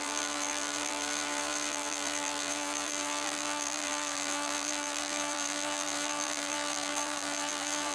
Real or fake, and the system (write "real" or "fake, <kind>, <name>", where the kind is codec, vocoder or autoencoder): fake, vocoder, BigVGAN v2